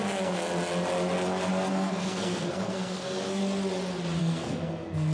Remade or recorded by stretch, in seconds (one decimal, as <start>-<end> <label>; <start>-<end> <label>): 0.0-0.4 remade; 0.4-1.7 recorded; 1.7-3.4 remade; 3.4-4.2 recorded; 4.2-5.1 remade